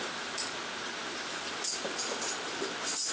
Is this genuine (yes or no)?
yes